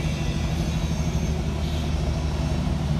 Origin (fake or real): real